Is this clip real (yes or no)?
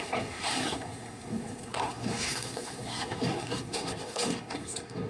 no